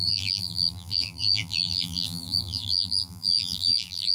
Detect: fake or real fake